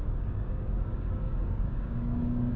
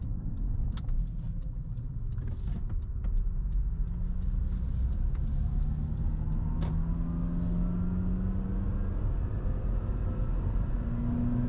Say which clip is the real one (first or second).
second